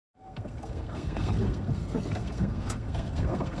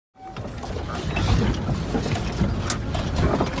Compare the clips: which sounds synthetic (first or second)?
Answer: first